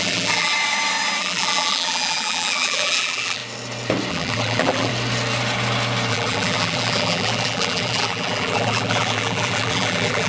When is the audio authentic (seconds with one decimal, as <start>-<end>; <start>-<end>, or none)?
0.5-1.2; 3.4-4.1; 4.9-6.1